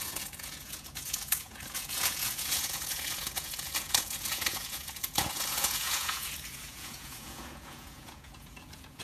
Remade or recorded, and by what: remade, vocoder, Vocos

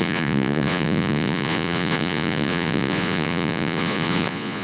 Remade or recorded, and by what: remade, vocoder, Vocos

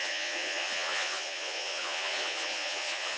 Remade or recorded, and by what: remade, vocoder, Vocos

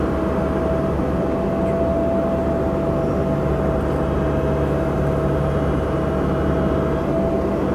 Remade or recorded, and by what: recorded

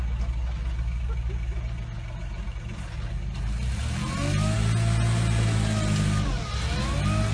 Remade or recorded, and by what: recorded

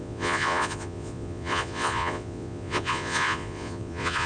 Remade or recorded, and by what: remade, vocoder, Vocos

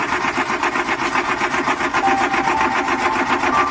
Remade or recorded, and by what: recorded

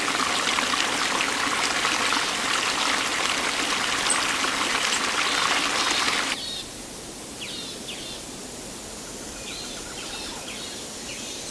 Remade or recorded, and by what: recorded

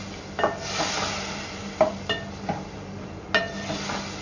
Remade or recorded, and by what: recorded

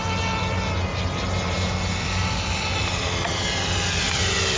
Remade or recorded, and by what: recorded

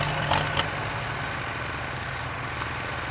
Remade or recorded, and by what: recorded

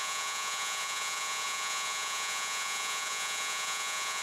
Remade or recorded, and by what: remade, vocoder, Vocos